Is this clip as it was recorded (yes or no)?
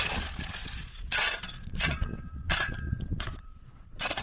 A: no